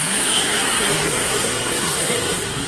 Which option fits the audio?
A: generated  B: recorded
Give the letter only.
A